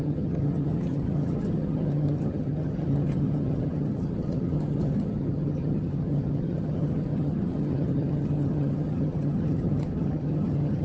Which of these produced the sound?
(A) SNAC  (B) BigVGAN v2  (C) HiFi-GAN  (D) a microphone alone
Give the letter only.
C